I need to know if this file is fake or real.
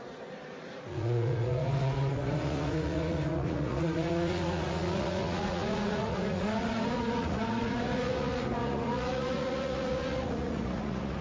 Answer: fake